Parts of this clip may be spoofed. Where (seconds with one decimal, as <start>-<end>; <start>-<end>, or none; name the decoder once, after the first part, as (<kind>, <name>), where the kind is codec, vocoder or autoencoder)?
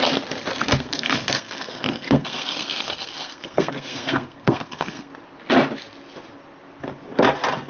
0.5-5.1 (codec, SNAC)